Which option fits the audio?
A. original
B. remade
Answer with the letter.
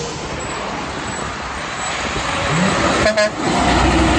A